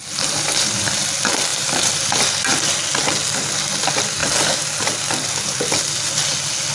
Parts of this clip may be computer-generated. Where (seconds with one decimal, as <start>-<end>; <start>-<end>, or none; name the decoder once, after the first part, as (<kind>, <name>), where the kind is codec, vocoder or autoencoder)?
none